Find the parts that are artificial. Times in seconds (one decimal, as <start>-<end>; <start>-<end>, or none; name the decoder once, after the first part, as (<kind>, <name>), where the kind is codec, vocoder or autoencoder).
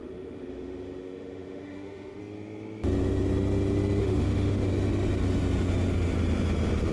0.0-2.2 (autoencoder, DAC-VAE); 4.0-4.7